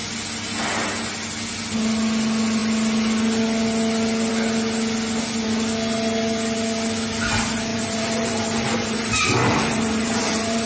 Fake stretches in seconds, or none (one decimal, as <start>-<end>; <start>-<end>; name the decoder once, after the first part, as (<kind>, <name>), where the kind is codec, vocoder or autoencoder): 7.7-10.7 (vocoder, BigVGAN v2)